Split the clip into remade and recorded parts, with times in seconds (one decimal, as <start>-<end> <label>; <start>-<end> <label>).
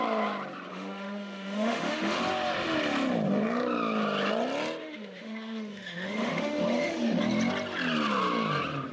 0.0-0.7 recorded; 0.7-2.2 remade; 2.2-4.8 recorded; 4.8-7.2 remade; 7.2-8.9 recorded